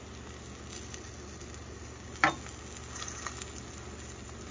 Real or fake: real